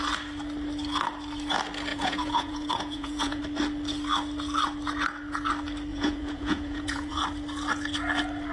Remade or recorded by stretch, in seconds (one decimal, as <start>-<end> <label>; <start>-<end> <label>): 0.0-1.9 recorded; 1.9-3.4 remade; 3.4-5.9 recorded; 5.9-7.2 remade; 7.2-8.5 recorded